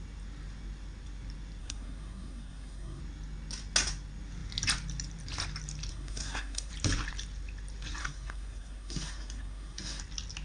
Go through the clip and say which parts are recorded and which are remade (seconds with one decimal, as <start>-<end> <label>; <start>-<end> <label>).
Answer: 0.0-1.6 recorded; 1.6-3.0 remade; 3.0-5.9 recorded; 5.9-6.7 remade; 6.7-8.0 recorded; 8.0-10.0 remade; 10.0-10.4 recorded